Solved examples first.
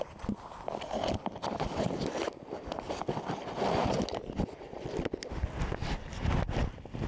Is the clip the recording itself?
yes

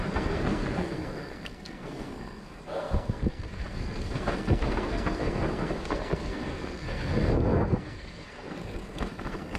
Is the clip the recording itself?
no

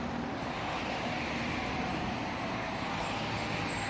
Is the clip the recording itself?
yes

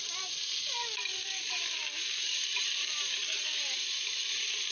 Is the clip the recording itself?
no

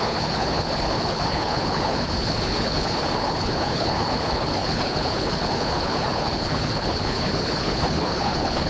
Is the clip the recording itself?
no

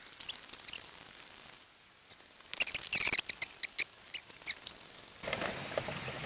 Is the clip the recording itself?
yes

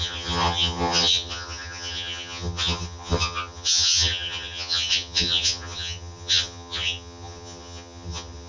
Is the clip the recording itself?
no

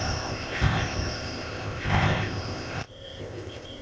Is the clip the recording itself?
no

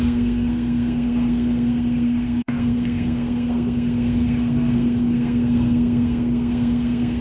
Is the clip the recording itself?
no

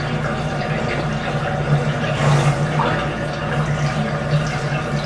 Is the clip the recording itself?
yes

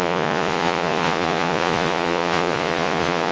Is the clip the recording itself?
no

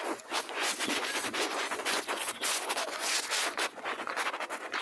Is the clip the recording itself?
no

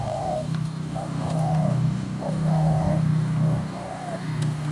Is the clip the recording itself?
no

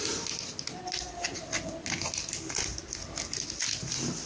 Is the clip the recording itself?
yes